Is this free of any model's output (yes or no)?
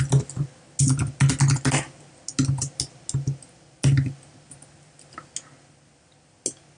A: yes